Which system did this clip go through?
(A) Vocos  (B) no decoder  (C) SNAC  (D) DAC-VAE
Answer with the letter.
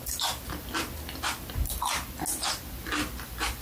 B